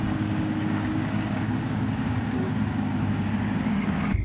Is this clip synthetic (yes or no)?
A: yes